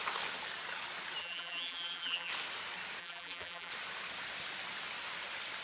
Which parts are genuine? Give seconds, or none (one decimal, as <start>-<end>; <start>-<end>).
0.0-1.2; 2.3-3.0; 3.7-5.6